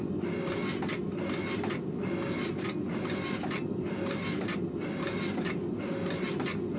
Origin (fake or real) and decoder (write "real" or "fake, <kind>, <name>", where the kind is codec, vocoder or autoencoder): real